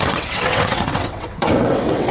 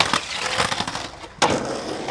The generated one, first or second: first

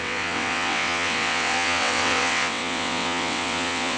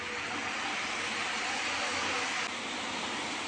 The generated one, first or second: first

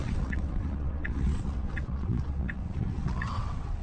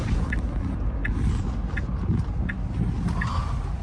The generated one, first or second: first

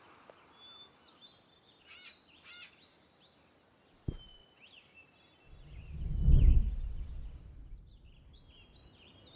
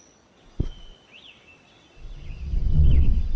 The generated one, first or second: second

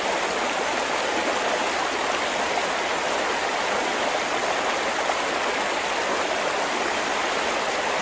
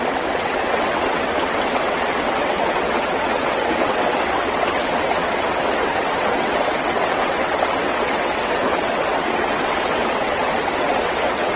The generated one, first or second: second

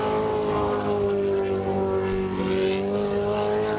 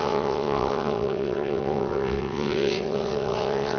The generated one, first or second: second